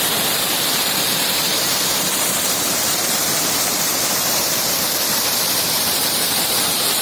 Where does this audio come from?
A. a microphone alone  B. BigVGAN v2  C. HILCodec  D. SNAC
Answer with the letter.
B